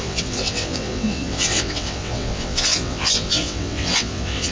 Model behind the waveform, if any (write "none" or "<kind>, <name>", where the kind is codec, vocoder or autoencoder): vocoder, WaveNeXt